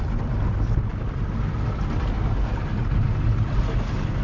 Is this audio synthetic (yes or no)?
no